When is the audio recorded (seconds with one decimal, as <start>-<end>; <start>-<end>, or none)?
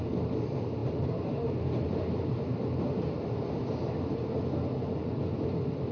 0.0-5.9